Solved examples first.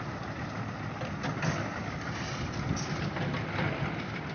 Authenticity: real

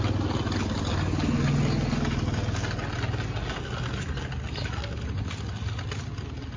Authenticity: real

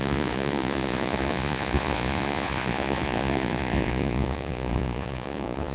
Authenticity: fake